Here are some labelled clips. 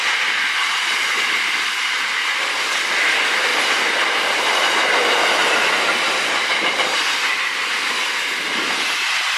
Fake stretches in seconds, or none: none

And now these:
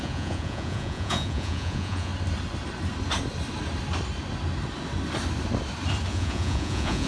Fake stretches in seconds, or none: 0.0-2.1 (vocoder, Vocos); 6.1-7.1

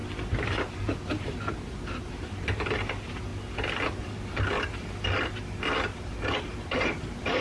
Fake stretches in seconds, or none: 0.8-3.3 (vocoder, BigVGAN v2); 6.3-7.4